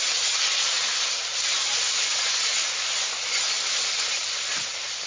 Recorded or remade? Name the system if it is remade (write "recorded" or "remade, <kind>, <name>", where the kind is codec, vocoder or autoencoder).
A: recorded